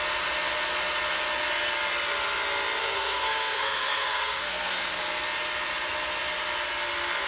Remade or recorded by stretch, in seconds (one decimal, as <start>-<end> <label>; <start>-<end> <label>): 0.0-2.8 recorded; 2.8-5.0 remade; 5.0-7.3 recorded

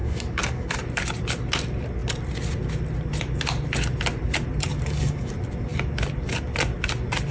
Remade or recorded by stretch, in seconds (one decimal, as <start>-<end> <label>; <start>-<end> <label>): 0.0-0.8 remade; 0.8-4.7 recorded; 4.7-5.3 remade; 5.3-7.3 recorded

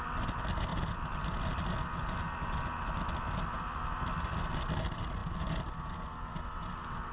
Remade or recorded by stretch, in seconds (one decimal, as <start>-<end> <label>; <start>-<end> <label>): 0.0-7.1 recorded

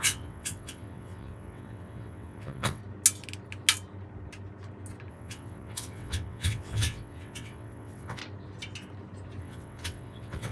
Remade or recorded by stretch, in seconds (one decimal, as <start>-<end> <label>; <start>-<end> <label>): 0.0-2.8 remade; 2.8-5.1 recorded; 5.1-8.2 remade; 8.2-9.4 recorded; 9.4-10.5 remade

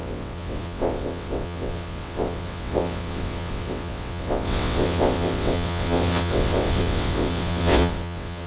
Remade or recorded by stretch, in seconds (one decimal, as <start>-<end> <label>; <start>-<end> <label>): 0.0-8.5 remade